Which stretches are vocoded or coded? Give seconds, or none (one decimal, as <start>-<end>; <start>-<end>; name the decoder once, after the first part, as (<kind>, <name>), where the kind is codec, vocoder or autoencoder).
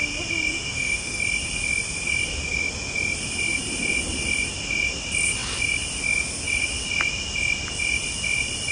0.5-1.2 (autoencoder, DAC-VAE)